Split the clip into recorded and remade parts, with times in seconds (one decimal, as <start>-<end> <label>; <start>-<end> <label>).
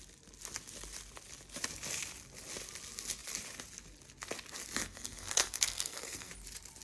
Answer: 0.0-4.8 recorded; 4.8-6.3 remade; 6.3-6.8 recorded